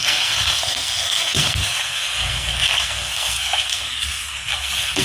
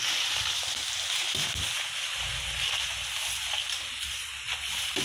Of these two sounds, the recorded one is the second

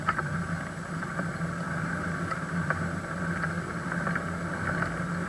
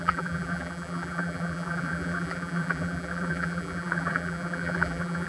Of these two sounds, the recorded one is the first